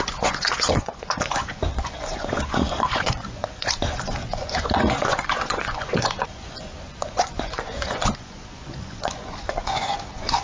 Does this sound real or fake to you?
fake